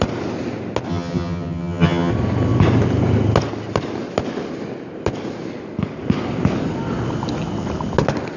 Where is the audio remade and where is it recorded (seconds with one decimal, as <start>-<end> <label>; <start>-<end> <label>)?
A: 0.0-0.9 recorded; 0.9-2.1 remade; 2.1-8.4 recorded